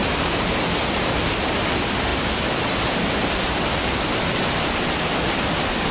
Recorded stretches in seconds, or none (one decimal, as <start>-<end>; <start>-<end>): 0.0-5.9